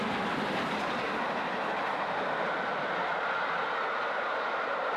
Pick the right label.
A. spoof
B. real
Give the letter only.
B